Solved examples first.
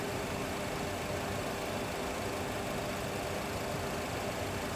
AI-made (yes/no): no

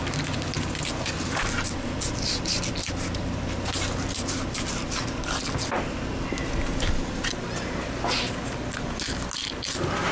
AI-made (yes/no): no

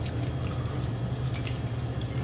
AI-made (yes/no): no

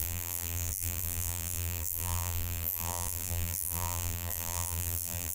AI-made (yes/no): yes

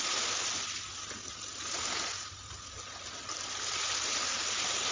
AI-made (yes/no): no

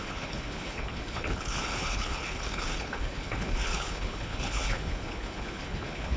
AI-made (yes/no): yes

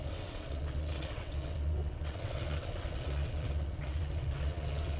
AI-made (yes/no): yes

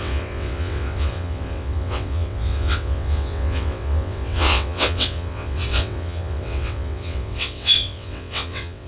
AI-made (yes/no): yes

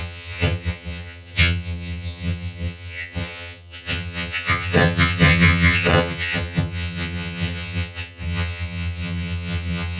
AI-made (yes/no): yes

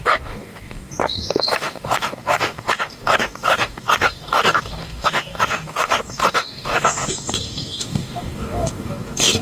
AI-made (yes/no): yes